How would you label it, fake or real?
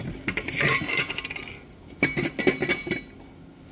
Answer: real